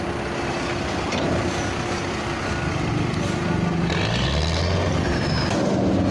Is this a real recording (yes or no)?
yes